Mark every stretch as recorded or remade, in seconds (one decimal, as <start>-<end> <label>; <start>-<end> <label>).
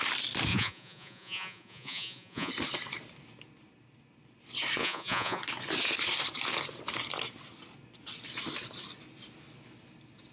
0.0-0.5 recorded; 0.5-2.5 remade; 2.5-4.8 recorded; 4.8-5.4 remade; 5.4-10.3 recorded